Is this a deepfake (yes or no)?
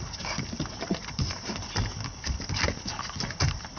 no